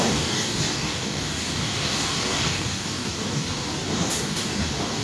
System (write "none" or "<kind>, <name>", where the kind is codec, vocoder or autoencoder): codec, DAC